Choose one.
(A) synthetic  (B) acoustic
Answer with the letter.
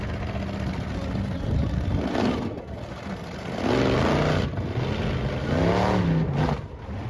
B